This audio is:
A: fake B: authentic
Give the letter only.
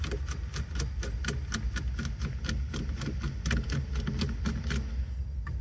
B